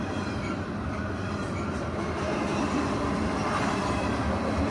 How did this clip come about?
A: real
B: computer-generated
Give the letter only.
A